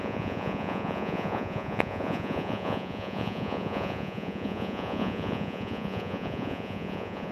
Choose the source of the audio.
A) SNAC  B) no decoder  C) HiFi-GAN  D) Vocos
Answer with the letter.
D